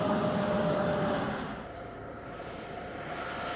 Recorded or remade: recorded